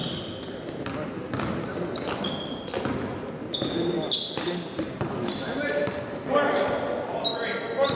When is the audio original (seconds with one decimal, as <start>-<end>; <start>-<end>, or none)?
0.0-7.9